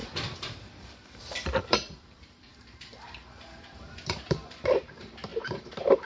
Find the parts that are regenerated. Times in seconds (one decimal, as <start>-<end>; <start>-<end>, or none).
0.0-6.1